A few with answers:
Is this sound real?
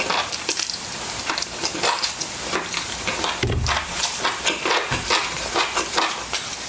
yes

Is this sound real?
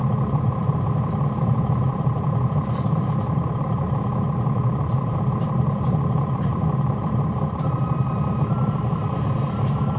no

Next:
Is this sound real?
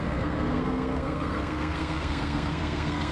no